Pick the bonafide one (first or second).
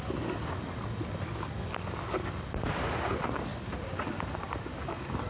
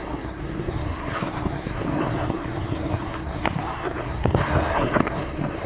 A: first